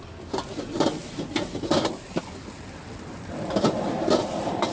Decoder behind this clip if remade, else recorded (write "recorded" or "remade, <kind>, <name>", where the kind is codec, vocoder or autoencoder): recorded